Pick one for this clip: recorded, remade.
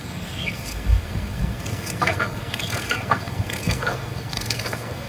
remade